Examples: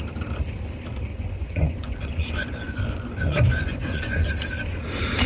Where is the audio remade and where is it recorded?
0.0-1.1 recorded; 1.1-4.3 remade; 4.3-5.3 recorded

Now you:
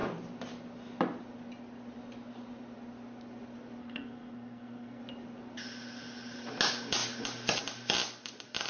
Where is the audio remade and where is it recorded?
0.0-3.8 recorded; 3.8-5.0 remade; 5.0-8.7 recorded

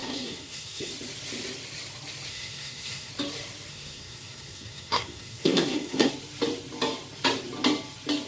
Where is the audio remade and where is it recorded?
0.0-0.9 remade; 0.9-2.3 recorded; 2.3-3.1 remade; 3.1-3.7 recorded; 3.7-6.1 remade; 6.1-8.3 recorded

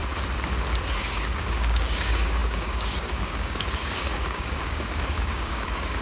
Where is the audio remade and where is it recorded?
0.0-1.0 recorded; 1.0-6.0 remade

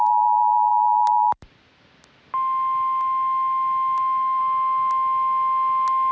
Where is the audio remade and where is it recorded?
0.0-6.1 recorded